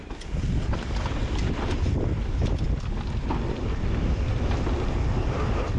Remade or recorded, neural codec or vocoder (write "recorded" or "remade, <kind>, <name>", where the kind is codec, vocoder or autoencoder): recorded